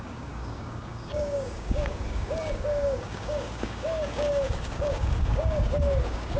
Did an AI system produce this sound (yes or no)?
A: yes